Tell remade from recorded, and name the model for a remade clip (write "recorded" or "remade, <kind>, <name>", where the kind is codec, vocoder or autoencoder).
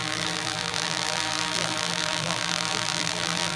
remade, vocoder, BigVGAN v2